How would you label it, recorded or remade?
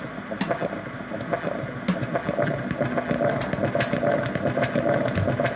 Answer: recorded